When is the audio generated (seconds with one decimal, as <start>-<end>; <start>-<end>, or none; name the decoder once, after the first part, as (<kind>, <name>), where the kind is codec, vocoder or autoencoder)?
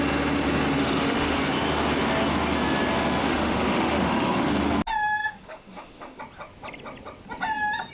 0.8-1.4 (autoencoder, DAC-VAE); 3.2-4.5; 5.2-6.2